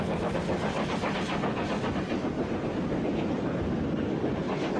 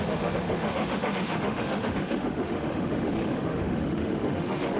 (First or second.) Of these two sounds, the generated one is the second